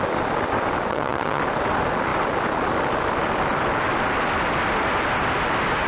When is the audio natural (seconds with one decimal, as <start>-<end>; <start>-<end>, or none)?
0.0-0.9; 1.4-5.9